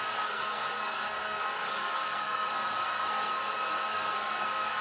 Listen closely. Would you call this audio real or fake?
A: fake